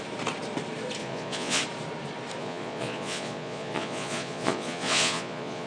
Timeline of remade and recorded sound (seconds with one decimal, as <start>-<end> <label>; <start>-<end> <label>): 0.0-1.0 recorded; 1.0-1.6 remade; 1.6-2.4 recorded; 2.4-5.7 remade